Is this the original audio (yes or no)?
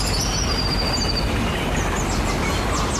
yes